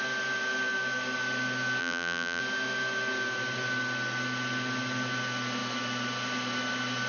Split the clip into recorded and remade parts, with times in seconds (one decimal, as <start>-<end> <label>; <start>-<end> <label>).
0.0-1.8 recorded; 1.8-2.4 remade; 2.4-7.1 recorded